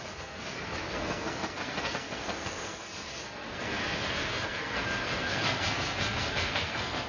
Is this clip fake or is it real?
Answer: fake